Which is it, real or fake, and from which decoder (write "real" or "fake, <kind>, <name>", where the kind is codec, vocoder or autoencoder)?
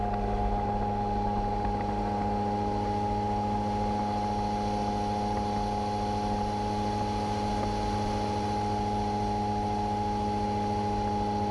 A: real